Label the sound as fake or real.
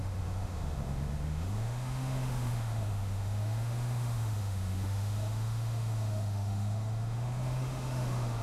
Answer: fake